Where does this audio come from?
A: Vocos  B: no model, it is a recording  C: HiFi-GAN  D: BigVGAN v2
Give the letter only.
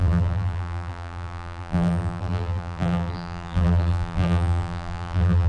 D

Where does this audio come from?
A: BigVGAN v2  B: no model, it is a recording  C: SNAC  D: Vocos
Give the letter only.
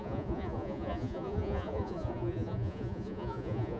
D